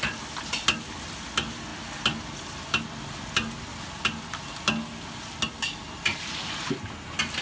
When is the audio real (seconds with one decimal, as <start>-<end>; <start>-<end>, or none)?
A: 0.0-6.1; 6.7-7.4